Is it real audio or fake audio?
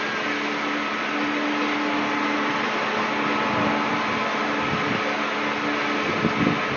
real